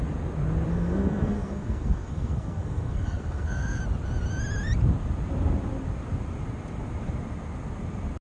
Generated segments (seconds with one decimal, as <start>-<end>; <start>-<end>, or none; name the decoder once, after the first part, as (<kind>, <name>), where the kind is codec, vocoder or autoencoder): 0.7-3.8 (codec, SNAC)